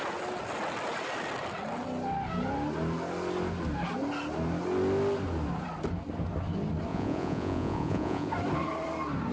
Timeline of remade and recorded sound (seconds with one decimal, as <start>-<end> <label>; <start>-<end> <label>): 0.0-6.9 recorded; 6.9-8.3 remade; 8.3-9.3 recorded